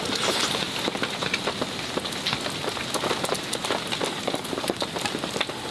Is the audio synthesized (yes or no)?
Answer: no